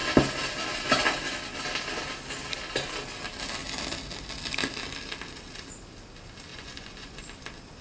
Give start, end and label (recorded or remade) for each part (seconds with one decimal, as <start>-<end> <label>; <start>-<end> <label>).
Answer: 0.0-6.5 recorded; 6.5-7.2 remade; 7.2-7.8 recorded